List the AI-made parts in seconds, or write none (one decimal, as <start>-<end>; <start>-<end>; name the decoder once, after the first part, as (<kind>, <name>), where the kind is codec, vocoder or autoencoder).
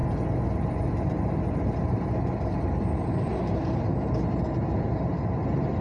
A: 0.5-3.9 (vocoder, BigVGAN v2); 4.7-5.8